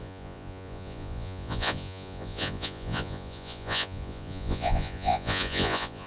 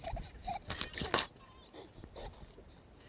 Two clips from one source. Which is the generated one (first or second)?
first